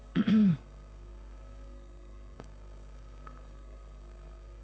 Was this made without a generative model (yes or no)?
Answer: no